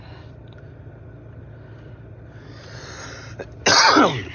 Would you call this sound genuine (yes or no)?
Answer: yes